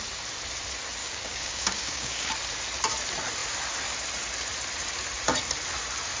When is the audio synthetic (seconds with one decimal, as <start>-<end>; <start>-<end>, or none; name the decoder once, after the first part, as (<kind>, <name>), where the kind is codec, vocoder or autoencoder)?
1.0-2.3 (codec, DAC)